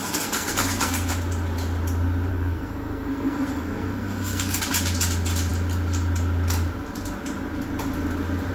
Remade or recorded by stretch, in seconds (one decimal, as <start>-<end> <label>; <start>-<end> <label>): 0.0-1.1 remade; 1.1-2.3 recorded; 2.3-4.6 remade; 4.6-8.5 recorded